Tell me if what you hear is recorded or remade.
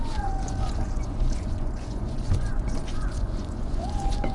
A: remade